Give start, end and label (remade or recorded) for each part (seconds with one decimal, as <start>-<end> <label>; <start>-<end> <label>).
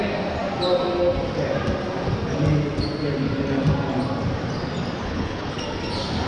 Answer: 0.0-5.0 recorded; 5.0-5.6 remade; 5.6-6.3 recorded